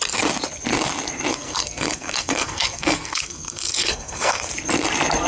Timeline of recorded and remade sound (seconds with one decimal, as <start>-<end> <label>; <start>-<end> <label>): 0.0-1.3 recorded; 1.3-4.5 remade; 4.5-5.3 recorded